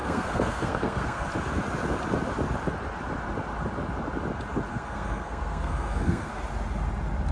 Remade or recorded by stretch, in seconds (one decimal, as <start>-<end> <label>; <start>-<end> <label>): 0.0-1.3 remade; 1.3-4.7 recorded; 4.7-6.3 remade; 6.3-7.3 recorded